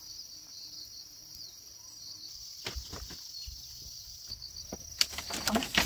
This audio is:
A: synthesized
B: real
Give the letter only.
B